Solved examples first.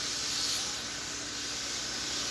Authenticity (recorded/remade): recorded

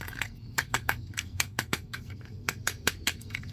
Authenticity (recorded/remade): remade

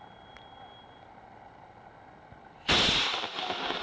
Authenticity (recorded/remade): recorded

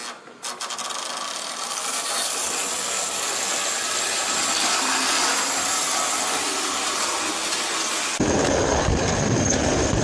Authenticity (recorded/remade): recorded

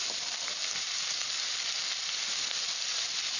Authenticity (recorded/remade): recorded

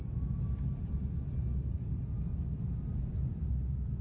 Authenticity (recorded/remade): recorded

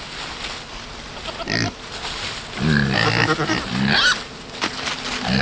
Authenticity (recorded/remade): recorded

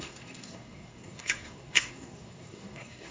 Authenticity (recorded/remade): remade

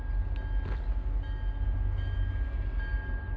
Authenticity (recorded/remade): recorded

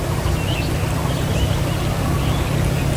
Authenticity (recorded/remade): recorded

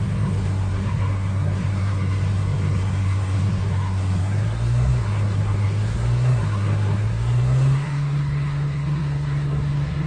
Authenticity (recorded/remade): remade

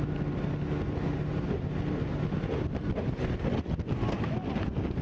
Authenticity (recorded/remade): recorded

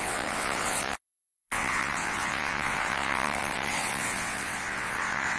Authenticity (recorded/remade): remade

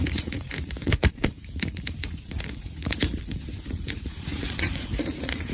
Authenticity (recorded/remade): remade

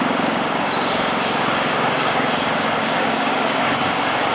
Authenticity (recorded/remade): remade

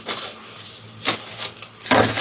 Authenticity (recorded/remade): recorded